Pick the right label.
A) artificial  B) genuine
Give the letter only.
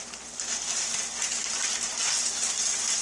B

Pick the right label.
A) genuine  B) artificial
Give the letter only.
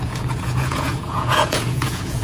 B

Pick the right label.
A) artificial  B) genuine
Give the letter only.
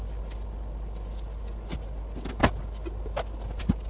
B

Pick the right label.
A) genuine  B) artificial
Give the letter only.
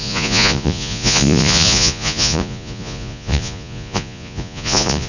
B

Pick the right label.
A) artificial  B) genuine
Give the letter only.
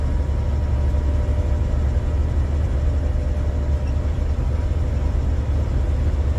B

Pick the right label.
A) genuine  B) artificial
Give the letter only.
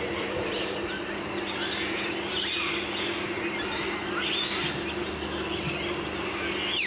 A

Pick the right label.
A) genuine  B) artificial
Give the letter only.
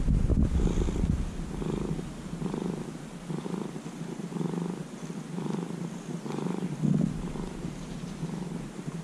A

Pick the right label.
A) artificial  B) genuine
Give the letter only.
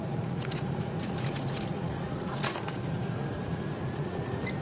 A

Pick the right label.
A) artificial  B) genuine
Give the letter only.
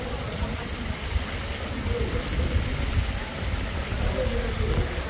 B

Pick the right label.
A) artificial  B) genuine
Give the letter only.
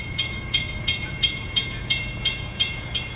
A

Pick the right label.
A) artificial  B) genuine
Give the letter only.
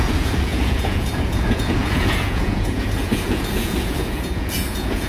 A